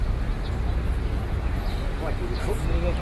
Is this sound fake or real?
real